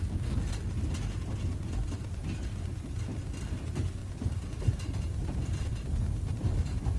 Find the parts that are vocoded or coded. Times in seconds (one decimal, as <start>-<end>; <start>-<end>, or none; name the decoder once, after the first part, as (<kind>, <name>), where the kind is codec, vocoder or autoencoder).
4.0-7.0 (vocoder, BigVGAN v2)